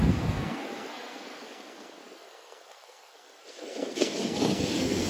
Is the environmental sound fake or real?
fake